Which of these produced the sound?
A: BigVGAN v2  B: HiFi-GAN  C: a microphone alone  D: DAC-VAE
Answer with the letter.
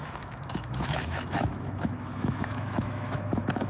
D